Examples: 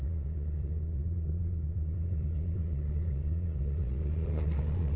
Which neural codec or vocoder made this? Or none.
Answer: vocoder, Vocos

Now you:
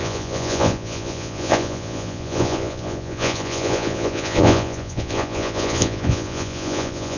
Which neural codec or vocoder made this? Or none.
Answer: vocoder, Vocos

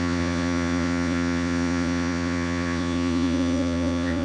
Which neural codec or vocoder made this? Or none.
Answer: vocoder, Vocos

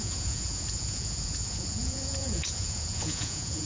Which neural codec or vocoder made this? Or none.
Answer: vocoder, Vocos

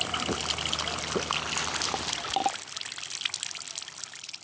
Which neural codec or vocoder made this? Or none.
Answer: none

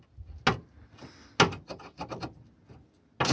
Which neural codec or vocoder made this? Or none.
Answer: none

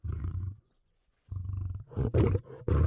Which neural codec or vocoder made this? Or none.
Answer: vocoder, Vocos